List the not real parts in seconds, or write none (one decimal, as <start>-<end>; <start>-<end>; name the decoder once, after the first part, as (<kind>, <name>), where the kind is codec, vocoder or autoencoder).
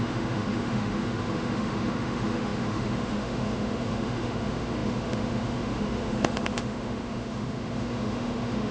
0.0-8.7 (autoencoder, DAC-VAE)